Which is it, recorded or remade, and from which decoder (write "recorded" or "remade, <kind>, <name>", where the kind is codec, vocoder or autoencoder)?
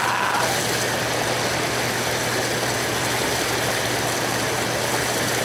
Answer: recorded